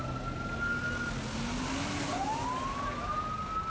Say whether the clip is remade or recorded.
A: recorded